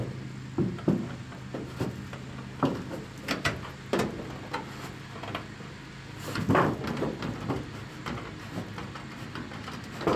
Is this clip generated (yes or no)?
no